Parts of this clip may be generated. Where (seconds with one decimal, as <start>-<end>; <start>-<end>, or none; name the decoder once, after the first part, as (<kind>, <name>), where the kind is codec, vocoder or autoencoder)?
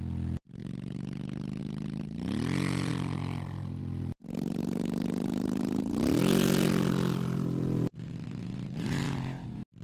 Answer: none